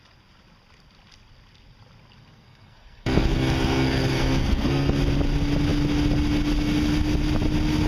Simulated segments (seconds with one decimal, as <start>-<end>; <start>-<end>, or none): 2.2-5.0